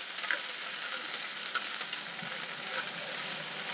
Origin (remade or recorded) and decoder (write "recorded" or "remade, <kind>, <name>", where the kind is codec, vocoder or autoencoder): recorded